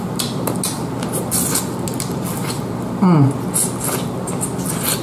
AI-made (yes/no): no